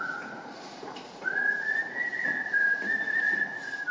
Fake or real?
fake